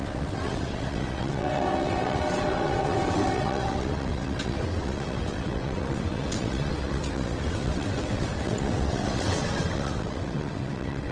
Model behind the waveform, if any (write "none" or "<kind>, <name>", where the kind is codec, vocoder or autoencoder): vocoder, WaveNeXt